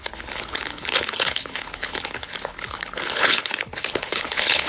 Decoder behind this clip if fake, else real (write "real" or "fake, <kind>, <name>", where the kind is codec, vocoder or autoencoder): fake, codec, HILCodec